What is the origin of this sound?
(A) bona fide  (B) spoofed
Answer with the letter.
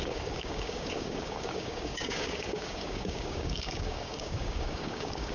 B